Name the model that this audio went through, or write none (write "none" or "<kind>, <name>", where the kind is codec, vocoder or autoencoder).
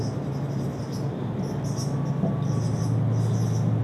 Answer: none